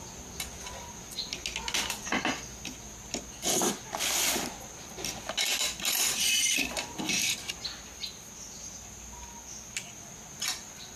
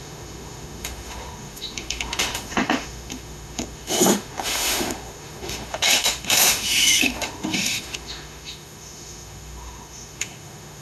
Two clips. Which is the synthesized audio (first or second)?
second